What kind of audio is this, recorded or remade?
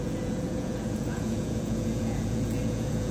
remade